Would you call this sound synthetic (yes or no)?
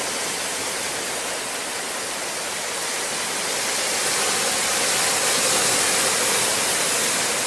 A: no